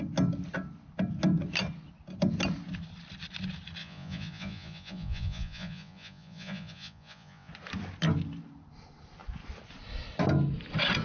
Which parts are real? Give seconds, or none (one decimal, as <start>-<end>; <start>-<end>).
0.0-3.8; 7.5-11.0